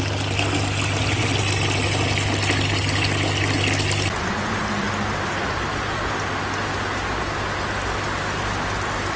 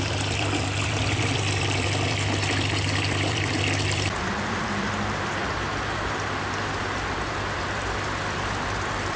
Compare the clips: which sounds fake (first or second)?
second